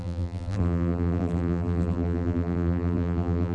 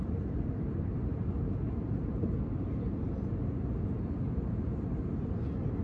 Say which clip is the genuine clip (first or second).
second